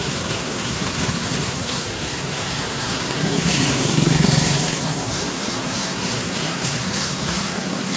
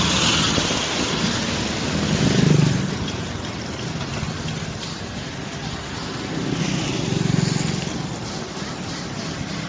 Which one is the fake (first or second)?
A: first